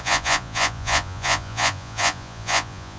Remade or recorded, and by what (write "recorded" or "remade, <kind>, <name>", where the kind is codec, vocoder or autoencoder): remade, vocoder, Vocos